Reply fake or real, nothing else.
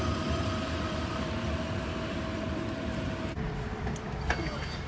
fake